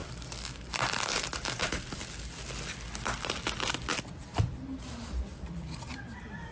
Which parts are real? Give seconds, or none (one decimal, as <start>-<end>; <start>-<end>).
0.0-3.9; 4.7-5.2